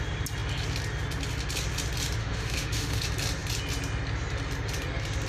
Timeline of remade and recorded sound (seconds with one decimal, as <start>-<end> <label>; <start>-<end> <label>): 0.0-2.2 recorded; 2.2-3.0 remade; 3.0-5.3 recorded